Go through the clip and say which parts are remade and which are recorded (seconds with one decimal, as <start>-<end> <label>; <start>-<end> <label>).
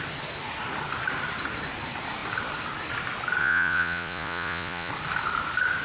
0.0-3.4 recorded; 3.4-4.9 remade; 4.9-5.8 recorded